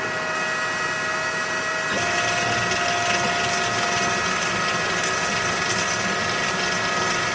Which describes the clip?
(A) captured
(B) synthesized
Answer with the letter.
A